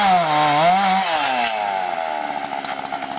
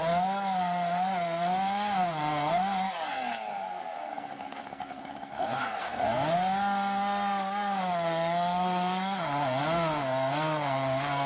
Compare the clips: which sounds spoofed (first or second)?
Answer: second